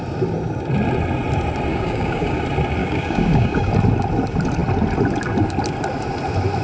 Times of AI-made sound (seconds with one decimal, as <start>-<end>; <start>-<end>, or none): 1.7-2.4; 2.8-3.7